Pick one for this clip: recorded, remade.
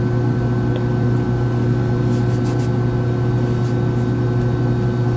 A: recorded